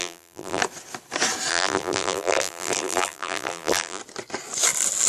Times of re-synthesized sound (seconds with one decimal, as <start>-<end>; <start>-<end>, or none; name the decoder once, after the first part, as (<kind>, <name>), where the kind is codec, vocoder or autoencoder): 0.0-0.6 (vocoder, BigVGAN v2); 1.5-4.0